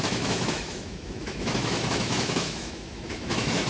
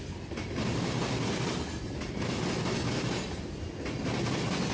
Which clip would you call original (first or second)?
second